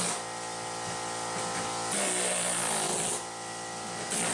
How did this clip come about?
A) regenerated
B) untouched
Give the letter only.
B